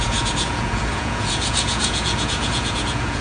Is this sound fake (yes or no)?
yes